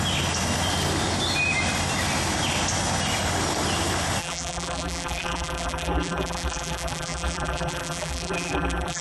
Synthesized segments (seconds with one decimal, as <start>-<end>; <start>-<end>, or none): 4.2-9.0